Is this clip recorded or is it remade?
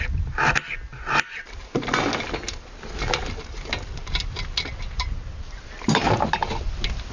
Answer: recorded